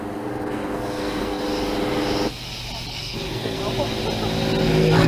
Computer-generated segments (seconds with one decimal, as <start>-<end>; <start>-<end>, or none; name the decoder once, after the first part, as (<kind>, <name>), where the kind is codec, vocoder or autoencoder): 0.0-1.4 (codec, SNAC); 2.9-3.6; 4.6-5.1